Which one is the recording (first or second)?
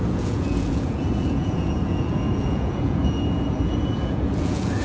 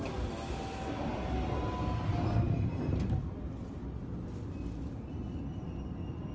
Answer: second